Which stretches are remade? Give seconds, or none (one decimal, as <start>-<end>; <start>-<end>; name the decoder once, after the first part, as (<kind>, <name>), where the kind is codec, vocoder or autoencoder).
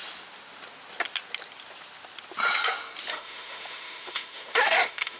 3.1-5.2 (autoencoder, DAC-VAE)